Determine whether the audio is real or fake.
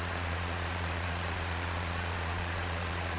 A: fake